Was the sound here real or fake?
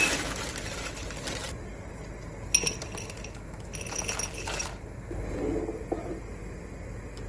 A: real